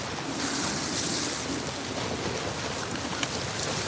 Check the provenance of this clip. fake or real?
real